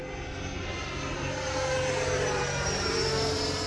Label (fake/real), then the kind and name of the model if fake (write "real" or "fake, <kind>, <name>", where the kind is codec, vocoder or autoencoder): real